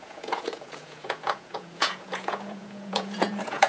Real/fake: fake